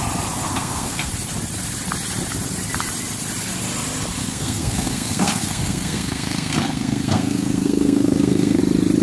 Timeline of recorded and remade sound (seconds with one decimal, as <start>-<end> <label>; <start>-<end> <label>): 0.0-0.4 recorded; 0.4-1.1 remade; 1.1-4.2 recorded; 4.2-8.6 remade; 8.6-9.0 recorded

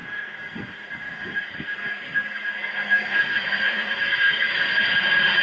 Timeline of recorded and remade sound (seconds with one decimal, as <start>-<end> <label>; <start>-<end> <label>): 0.0-4.9 remade; 4.9-5.4 recorded

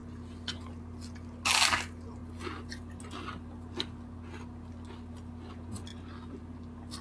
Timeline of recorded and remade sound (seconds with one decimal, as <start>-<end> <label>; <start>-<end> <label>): 0.0-7.0 recorded